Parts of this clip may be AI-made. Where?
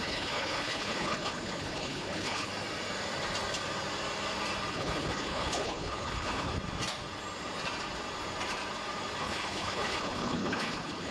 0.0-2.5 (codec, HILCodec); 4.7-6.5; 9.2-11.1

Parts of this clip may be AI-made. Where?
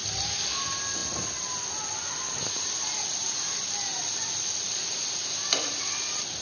none